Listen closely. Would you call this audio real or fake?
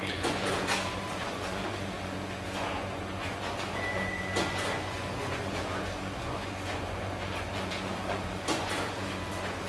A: fake